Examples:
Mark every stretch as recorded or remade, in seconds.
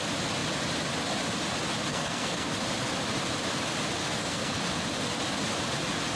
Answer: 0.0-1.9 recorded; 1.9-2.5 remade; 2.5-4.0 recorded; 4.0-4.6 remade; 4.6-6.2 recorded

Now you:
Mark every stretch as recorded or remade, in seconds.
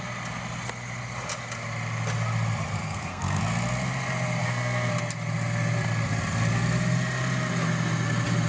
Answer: 0.0-2.8 recorded; 2.8-3.4 remade; 3.4-4.4 recorded; 4.4-4.9 remade; 4.9-8.5 recorded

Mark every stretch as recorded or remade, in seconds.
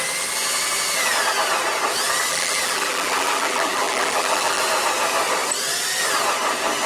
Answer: 0.0-2.3 recorded; 2.3-4.6 remade; 4.6-6.9 recorded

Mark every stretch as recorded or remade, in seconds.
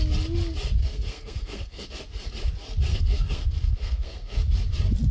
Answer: 0.0-0.8 recorded; 0.8-2.0 remade; 2.0-2.9 recorded; 2.9-4.4 remade; 4.4-5.1 recorded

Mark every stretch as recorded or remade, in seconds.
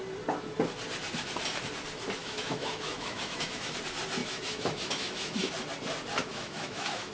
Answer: 0.0-2.2 recorded; 2.2-3.7 remade; 3.7-4.2 recorded; 4.2-5.5 remade; 5.5-6.2 recorded; 6.2-7.1 remade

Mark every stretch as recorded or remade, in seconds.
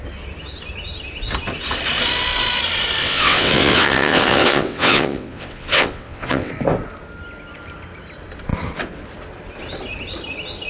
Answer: 0.0-3.0 recorded; 3.0-6.5 remade; 6.5-10.7 recorded